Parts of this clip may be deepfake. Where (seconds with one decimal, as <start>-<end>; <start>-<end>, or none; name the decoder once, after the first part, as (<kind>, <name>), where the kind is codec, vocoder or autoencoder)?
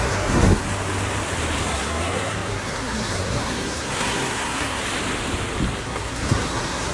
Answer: 0.0-0.6 (codec, SNAC); 1.6-4.8; 5.8-6.9